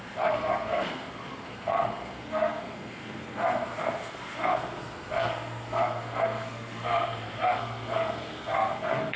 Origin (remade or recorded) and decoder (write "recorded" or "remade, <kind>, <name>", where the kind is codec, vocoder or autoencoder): remade, codec, SNAC